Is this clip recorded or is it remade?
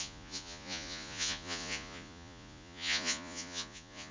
remade